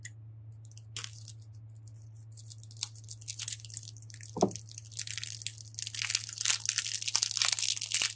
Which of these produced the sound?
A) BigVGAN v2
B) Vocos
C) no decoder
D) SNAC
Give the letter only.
C